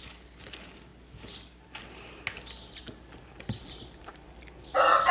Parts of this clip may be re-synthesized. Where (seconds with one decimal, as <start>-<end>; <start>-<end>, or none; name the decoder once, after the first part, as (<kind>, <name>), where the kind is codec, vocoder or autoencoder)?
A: none